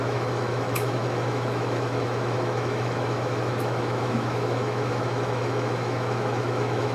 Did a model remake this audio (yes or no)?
yes